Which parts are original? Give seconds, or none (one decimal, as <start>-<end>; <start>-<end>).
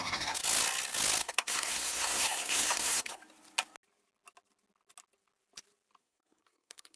0.4-1.2; 3.2-6.0